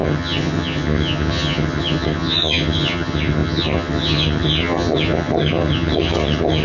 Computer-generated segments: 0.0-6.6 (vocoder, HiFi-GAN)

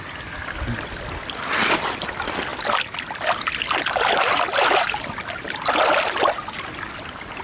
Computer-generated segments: none

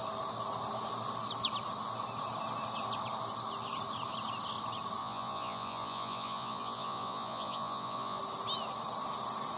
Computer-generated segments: 5.0-8.2 (vocoder, Vocos)

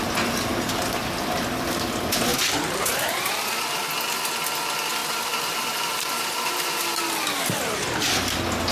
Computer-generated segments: 2.3-3.8 (vocoder, BigVGAN v2); 5.0-7.0